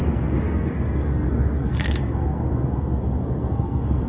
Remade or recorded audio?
remade